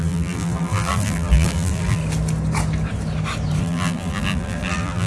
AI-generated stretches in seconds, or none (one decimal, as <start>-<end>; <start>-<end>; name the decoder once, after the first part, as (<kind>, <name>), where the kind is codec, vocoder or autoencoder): 0.0-2.0 (vocoder, BigVGAN v2); 3.6-5.1